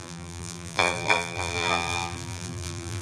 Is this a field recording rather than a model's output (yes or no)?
no